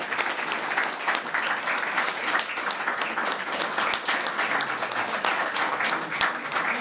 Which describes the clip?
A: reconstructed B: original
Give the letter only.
B